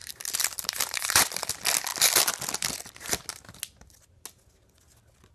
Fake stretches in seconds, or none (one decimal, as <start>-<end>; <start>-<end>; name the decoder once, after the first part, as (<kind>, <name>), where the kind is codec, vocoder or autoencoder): 0.0-1.5 (vocoder, BigVGAN v2)